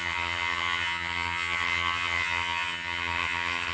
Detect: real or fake fake